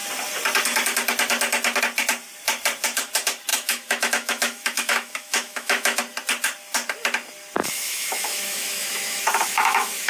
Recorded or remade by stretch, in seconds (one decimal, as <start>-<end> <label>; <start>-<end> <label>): 0.0-3.5 recorded; 3.5-6.0 remade; 6.0-7.6 recorded; 7.6-10.1 remade